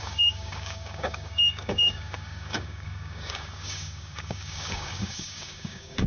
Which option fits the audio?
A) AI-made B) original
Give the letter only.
A